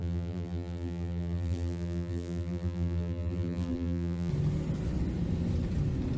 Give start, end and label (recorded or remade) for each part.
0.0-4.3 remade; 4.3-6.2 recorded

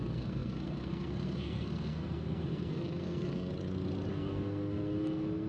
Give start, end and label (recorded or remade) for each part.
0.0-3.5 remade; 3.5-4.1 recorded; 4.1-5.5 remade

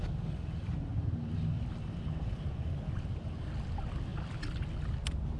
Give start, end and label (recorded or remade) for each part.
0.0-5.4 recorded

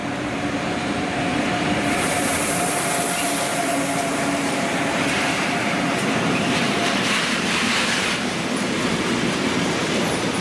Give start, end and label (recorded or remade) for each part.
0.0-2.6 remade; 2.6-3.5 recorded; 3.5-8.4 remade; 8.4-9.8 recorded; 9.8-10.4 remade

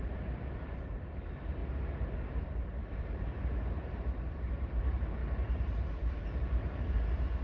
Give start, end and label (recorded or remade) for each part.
0.0-1.6 remade; 1.6-2.4 recorded; 2.4-7.4 remade

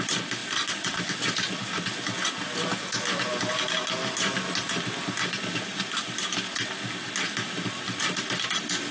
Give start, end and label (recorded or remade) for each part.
0.0-8.9 recorded